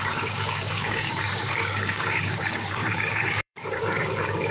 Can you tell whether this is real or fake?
fake